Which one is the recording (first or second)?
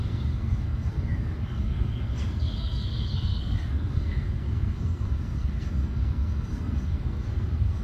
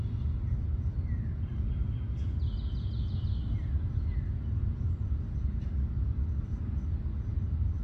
second